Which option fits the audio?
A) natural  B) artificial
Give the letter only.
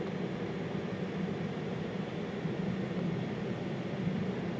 A